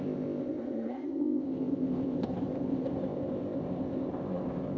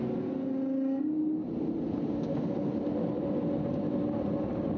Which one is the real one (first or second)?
second